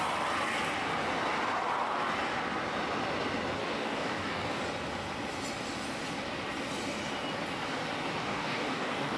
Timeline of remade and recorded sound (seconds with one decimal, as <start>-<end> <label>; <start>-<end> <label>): 0.0-3.6 recorded; 3.6-4.6 remade; 4.6-8.2 recorded; 8.2-9.2 remade